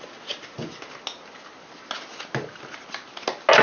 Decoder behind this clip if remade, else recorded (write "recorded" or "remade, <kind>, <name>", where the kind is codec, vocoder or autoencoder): recorded